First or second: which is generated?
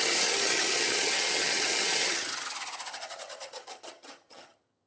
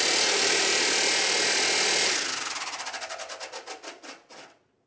first